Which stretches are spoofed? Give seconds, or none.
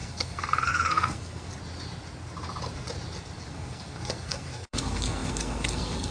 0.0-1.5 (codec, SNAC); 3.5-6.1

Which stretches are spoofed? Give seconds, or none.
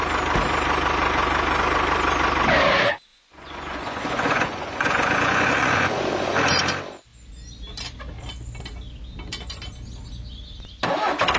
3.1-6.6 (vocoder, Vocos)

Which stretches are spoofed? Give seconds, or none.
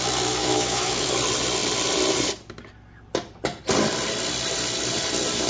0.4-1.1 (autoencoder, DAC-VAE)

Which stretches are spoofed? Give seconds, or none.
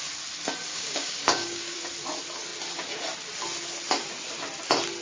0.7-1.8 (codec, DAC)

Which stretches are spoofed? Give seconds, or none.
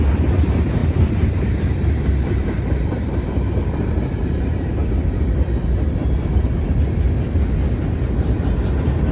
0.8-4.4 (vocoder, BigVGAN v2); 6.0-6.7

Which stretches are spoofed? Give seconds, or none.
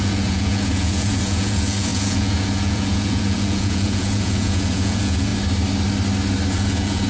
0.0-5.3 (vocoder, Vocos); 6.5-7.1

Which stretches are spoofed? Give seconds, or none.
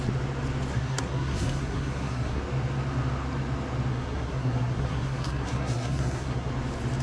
0.7-2.4 (codec, SNAC); 3.9-6.5